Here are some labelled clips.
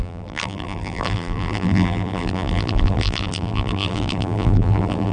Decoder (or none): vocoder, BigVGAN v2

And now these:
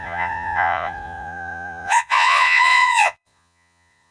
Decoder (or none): vocoder, Vocos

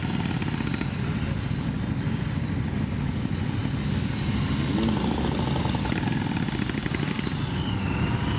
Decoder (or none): none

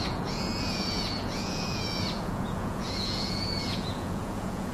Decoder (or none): vocoder, Vocos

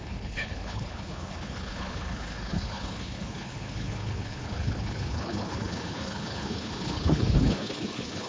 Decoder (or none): codec, HILCodec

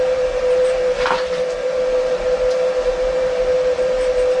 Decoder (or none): none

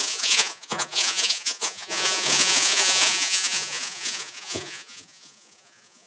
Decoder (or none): vocoder, Vocos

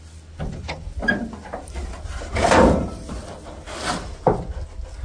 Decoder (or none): none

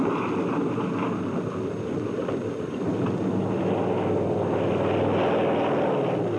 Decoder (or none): none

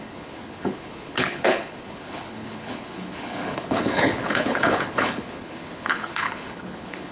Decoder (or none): codec, HILCodec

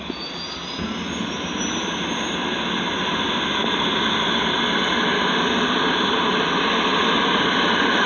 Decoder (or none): none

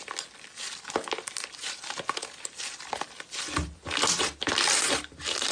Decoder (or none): none